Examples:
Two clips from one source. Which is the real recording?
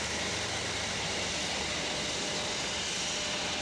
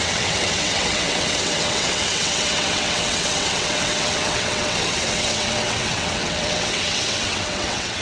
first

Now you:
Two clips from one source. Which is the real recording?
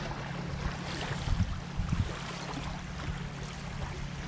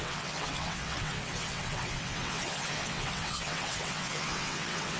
first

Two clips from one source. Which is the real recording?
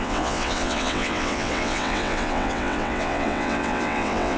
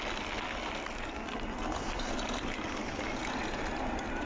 second